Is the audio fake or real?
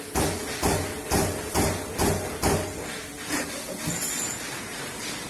real